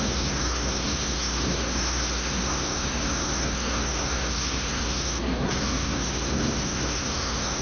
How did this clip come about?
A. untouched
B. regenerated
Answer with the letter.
B